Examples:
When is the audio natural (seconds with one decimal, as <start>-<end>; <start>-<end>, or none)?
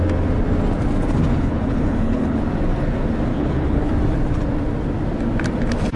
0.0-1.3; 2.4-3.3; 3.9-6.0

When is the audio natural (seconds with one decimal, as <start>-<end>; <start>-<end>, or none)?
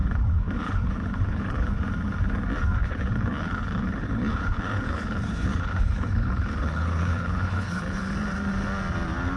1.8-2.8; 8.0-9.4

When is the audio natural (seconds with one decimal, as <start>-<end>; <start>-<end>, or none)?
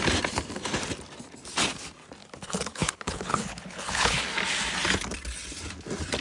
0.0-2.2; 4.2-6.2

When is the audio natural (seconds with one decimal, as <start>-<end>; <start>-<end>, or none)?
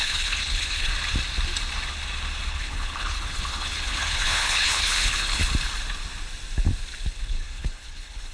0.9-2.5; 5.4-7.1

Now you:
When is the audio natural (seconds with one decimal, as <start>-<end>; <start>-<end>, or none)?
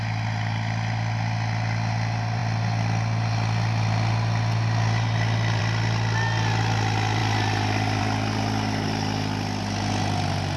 0.0-10.6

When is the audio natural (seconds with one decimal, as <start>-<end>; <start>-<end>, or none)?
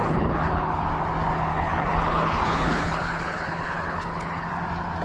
0.9-1.5; 4.5-5.0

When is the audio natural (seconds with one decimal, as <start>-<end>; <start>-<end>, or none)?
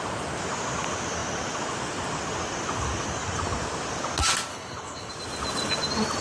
0.0-4.5; 5.1-6.2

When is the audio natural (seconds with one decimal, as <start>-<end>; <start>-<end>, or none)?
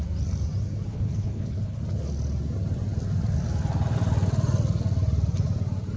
0.0-0.9; 1.8-6.0